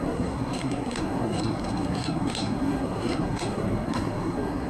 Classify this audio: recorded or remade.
remade